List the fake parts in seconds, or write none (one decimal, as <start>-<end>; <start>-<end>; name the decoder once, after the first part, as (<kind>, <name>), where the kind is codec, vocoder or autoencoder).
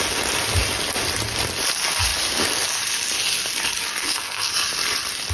4.0-4.5 (codec, SNAC)